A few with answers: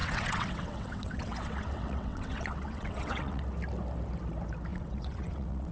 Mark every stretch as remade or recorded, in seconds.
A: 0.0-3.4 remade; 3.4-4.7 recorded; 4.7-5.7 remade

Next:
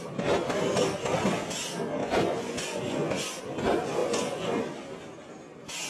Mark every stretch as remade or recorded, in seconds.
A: 0.0-2.0 recorded; 2.0-3.4 remade; 3.4-4.0 recorded; 4.0-4.6 remade; 4.6-5.9 recorded

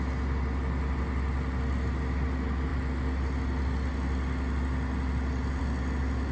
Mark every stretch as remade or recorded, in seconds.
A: 0.0-6.3 recorded

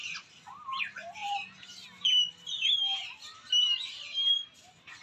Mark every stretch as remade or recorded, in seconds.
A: 0.0-5.0 recorded

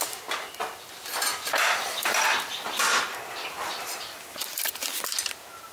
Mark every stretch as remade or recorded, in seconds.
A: 0.0-1.3 recorded; 1.3-4.7 remade; 4.7-5.7 recorded

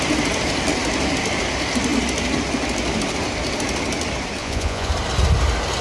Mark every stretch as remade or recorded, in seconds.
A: 0.0-4.4 recorded; 4.4-4.9 remade; 4.9-5.8 recorded

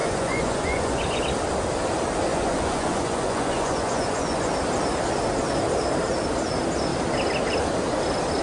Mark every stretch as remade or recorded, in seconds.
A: 0.0-1.2 remade; 1.2-2.3 recorded; 2.3-4.5 remade; 4.5-8.4 recorded

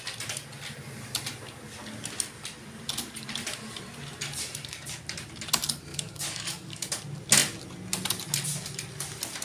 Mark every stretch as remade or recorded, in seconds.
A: 0.0-5.9 recorded; 5.9-6.9 remade; 6.9-9.4 recorded